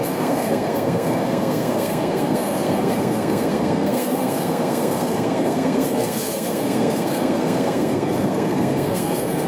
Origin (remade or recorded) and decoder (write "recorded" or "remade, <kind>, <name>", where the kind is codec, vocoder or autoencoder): remade, codec, SNAC